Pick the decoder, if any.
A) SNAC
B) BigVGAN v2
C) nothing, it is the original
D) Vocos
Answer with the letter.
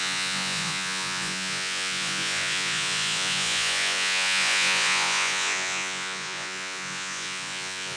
D